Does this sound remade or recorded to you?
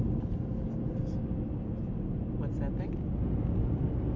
recorded